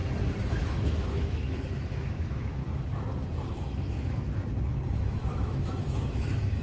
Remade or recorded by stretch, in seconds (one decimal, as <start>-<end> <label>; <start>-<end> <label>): 0.0-0.5 recorded; 0.5-2.6 remade; 2.6-3.5 recorded; 3.5-4.3 remade; 4.3-4.9 recorded; 4.9-6.6 remade